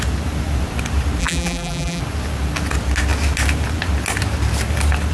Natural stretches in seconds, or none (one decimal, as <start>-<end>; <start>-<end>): 0.0-1.2; 2.0-5.1